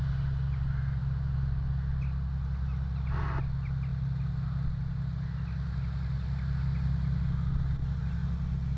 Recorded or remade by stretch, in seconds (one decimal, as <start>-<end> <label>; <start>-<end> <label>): 0.0-8.8 recorded